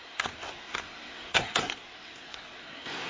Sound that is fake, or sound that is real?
fake